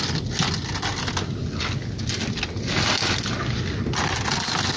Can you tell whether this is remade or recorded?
recorded